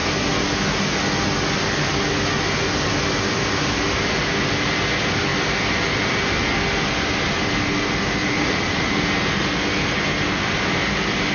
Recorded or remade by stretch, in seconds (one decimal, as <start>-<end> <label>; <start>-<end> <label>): 0.0-8.2 recorded; 8.2-8.9 remade; 8.9-11.3 recorded

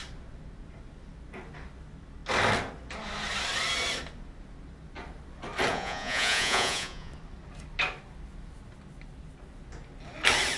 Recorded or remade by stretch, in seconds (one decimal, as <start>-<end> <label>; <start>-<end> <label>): 0.0-5.7 recorded; 5.7-7.1 remade; 7.1-10.6 recorded